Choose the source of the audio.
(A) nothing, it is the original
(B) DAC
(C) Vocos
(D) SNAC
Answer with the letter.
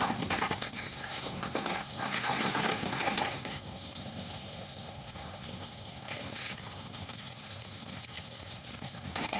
D